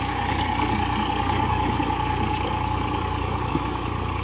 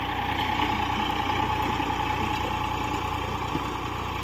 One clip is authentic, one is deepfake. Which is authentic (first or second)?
second